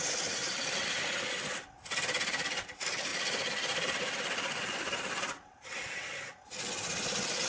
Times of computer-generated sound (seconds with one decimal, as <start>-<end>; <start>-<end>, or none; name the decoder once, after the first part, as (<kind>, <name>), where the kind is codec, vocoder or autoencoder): none